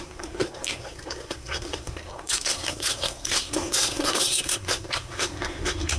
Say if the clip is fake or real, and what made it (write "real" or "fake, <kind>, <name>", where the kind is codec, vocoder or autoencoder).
fake, codec, SNAC